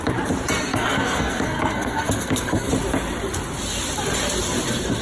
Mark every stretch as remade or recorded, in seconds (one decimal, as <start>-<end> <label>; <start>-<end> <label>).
0.0-0.7 recorded; 0.7-2.7 remade; 2.7-5.0 recorded